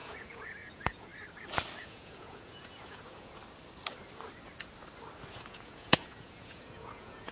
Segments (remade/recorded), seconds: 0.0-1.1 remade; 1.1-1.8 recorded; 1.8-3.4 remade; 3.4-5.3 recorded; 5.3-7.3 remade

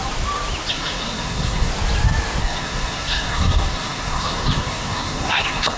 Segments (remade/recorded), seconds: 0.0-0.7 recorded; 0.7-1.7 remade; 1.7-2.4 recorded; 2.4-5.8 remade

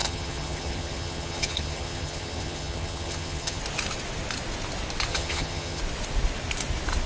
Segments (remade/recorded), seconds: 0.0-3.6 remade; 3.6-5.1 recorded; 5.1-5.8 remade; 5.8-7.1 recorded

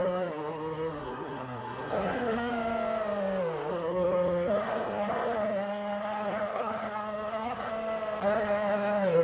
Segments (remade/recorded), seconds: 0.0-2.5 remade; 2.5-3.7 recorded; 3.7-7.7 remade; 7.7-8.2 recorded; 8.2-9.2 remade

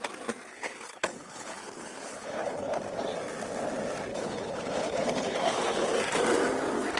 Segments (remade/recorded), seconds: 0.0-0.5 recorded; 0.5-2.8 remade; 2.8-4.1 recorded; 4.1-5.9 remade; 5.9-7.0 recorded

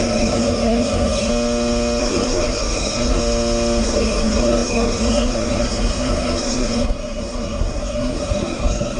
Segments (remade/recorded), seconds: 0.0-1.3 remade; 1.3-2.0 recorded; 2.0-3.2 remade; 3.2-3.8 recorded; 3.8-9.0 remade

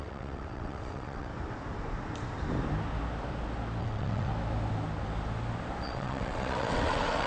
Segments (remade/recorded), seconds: 0.0-1.3 remade; 1.3-3.8 recorded; 3.8-4.3 remade; 4.3-5.8 recorded; 5.8-7.3 remade